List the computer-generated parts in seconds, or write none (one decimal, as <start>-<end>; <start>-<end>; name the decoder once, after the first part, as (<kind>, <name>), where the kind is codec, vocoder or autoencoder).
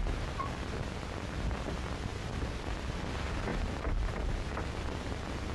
2.1-3.0 (vocoder, BigVGAN v2); 3.5-4.5